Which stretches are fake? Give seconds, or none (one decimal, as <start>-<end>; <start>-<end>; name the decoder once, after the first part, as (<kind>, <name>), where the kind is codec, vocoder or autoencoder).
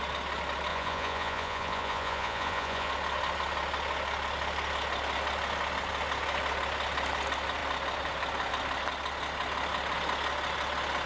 0.7-2.9 (vocoder, Vocos)